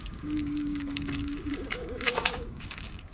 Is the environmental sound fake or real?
fake